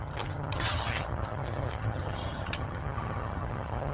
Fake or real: fake